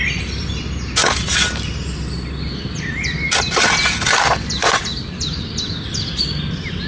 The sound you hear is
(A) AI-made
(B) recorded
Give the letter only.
B